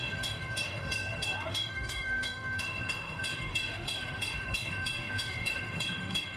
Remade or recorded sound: remade